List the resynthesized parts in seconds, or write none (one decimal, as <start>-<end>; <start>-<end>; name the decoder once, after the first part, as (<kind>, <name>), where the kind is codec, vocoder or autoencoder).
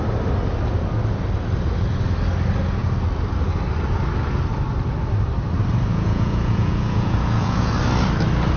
5.9-7.7 (vocoder, Vocos)